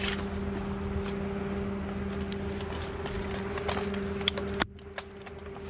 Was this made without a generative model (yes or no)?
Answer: yes